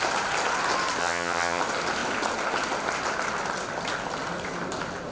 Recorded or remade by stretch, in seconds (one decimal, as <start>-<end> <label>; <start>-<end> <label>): 0.0-1.0 recorded; 1.0-1.6 remade; 1.6-5.1 recorded